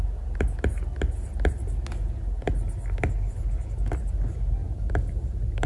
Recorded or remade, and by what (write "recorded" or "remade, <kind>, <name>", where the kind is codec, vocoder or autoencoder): recorded